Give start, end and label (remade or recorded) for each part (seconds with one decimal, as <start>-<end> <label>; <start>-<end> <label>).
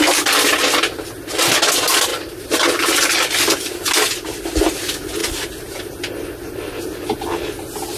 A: 0.0-2.1 recorded; 2.1-3.7 remade; 3.7-5.2 recorded; 5.2-5.9 remade; 5.9-8.0 recorded